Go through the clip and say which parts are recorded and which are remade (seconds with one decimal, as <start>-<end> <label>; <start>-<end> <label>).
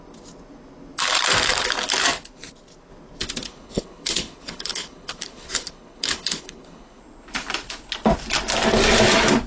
0.0-3.4 recorded; 3.4-7.0 remade; 7.0-9.5 recorded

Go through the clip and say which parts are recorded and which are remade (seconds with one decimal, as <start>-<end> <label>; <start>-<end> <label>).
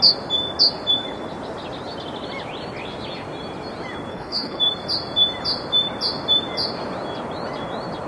0.0-4.1 recorded; 4.1-4.6 remade; 4.6-8.1 recorded